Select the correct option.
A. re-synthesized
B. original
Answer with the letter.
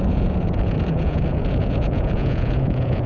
A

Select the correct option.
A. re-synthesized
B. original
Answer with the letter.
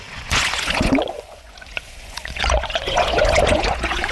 A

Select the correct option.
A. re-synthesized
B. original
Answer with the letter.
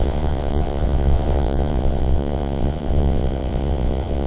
A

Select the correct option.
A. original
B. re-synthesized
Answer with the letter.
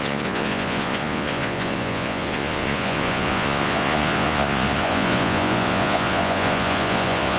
B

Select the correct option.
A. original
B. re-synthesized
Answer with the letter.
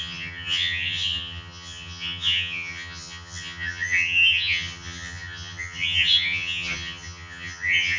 B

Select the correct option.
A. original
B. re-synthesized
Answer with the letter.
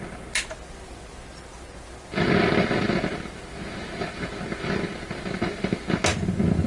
A